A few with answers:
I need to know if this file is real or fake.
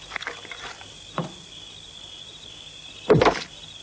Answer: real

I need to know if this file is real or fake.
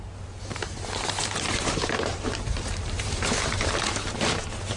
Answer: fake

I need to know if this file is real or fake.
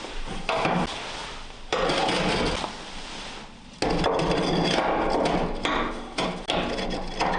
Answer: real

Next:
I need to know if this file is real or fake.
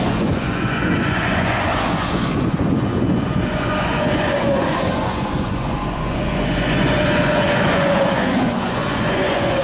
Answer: fake